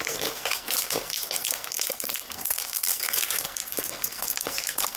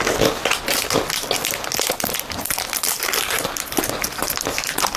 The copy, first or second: first